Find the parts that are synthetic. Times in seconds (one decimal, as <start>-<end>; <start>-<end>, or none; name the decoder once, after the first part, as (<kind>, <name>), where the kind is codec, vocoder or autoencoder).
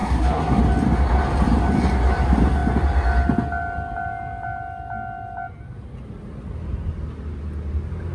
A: 0.0-0.6 (codec, SNAC)